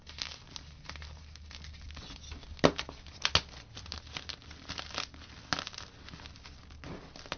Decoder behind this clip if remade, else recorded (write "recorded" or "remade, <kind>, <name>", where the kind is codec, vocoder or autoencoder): recorded